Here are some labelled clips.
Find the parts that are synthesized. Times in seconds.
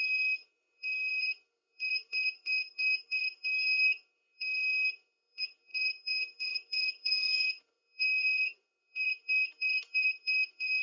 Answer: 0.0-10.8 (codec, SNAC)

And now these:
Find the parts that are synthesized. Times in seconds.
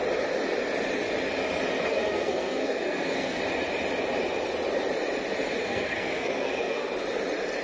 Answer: 1.9-3.4 (codec, SNAC); 5.6-6.9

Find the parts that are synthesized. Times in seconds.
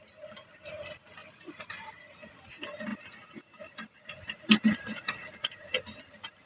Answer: 1.2-1.9 (vocoder, BigVGAN v2); 2.9-6.5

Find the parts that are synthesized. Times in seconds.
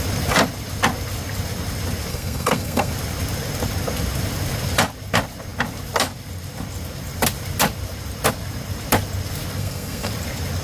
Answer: 2.1-2.9 (codec, SNAC); 9.6-10.1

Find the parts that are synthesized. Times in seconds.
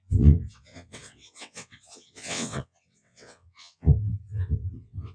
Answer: 0.0-5.1 (vocoder, WaveNeXt)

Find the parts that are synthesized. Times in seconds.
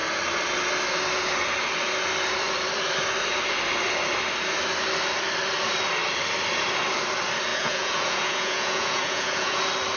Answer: 7.5-9.6 (vocoder, Vocos)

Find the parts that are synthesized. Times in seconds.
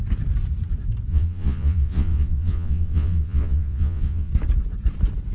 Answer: 1.1-4.3 (vocoder, Vocos)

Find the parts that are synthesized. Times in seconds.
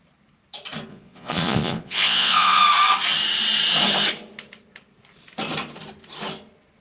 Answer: 0.9-2.6 (vocoder, Vocos)